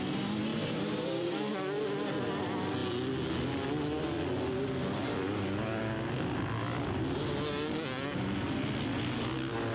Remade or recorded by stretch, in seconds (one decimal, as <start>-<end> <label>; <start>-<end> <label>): 0.0-0.5 recorded; 0.5-1.5 remade; 1.5-9.7 recorded